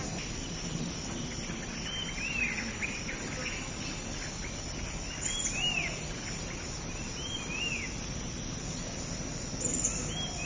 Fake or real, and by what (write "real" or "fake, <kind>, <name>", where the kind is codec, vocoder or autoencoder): real